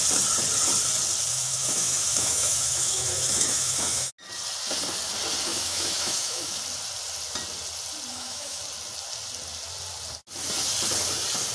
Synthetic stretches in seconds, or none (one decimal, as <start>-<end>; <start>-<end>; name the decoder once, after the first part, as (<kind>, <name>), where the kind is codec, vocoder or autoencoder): 1.3-4.1 (autoencoder, DAC-VAE); 5.5-6.6; 8.1-8.6